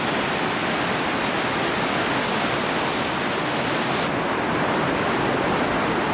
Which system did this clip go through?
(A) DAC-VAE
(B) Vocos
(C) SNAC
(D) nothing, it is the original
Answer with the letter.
D